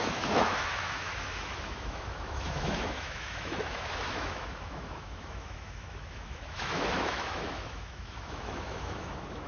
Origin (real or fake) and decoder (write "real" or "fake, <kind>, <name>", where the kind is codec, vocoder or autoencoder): fake, autoencoder, DAC-VAE